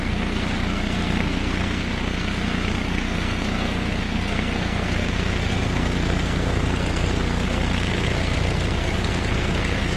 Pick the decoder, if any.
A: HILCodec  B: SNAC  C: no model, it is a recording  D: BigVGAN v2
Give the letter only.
B